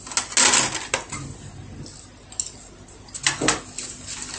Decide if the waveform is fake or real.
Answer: real